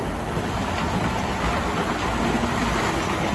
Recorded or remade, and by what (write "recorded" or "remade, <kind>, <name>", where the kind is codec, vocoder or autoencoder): recorded